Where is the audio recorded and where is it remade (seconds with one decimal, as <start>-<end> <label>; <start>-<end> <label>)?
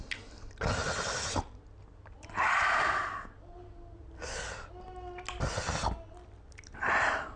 0.0-7.4 recorded